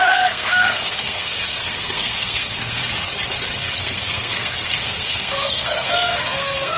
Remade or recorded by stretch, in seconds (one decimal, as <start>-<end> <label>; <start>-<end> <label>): 0.0-2.8 remade; 2.8-3.8 recorded; 3.8-6.8 remade